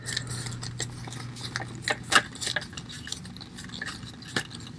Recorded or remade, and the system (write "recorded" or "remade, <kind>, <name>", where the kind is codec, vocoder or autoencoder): recorded